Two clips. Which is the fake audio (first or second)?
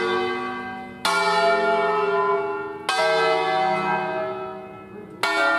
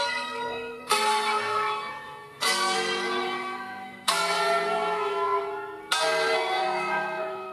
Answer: second